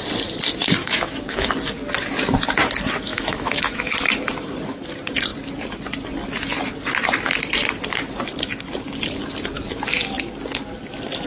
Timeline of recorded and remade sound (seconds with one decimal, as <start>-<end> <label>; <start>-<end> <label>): 0.0-0.8 recorded; 0.8-1.5 remade; 1.5-3.1 recorded; 3.1-3.9 remade; 3.9-11.3 recorded

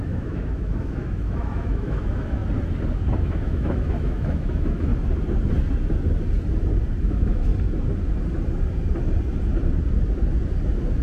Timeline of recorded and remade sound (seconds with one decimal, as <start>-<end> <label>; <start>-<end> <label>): 0.0-2.4 remade; 2.4-3.2 recorded; 3.2-4.9 remade; 4.9-7.0 recorded; 7.0-7.5 remade; 7.5-11.0 recorded